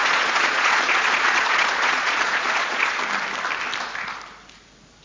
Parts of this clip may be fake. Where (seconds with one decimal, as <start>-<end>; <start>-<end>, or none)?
0.0-3.0